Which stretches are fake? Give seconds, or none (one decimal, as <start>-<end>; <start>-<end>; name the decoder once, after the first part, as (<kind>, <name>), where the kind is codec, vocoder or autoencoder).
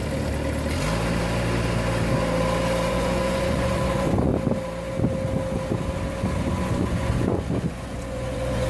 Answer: 2.9-4.3 (vocoder, Vocos); 6.4-8.7